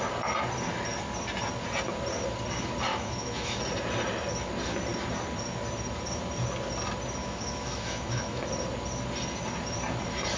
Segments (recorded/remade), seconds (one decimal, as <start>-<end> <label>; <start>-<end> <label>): 0.0-2.9 recorded; 2.9-3.6 remade; 3.6-7.2 recorded; 7.2-8.5 remade; 8.5-10.4 recorded